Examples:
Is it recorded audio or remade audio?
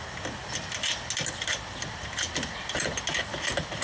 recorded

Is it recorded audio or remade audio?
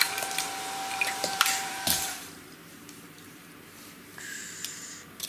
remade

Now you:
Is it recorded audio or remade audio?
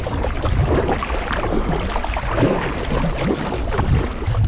recorded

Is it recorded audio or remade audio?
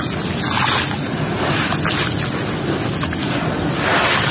recorded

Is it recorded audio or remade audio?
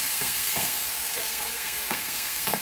remade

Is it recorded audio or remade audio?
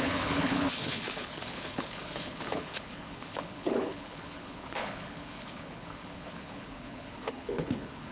remade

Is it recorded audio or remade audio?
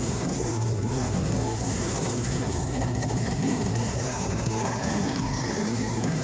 remade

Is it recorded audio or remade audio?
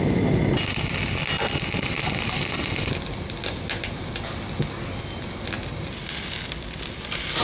recorded